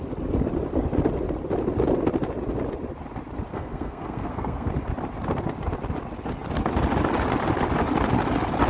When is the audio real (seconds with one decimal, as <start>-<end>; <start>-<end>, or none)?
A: 0.0-3.5; 4.7-8.7